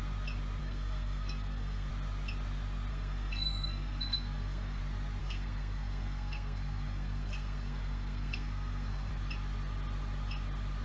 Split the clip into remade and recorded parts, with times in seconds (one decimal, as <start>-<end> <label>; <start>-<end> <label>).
0.0-0.6 recorded; 0.6-1.9 remade; 1.9-2.9 recorded; 2.9-4.8 remade; 4.8-5.2 recorded; 5.2-9.1 remade; 9.1-10.8 recorded